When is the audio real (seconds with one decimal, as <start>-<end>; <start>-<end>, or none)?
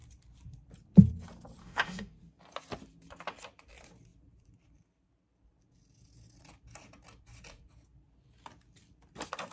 0.0-1.6; 2.1-9.5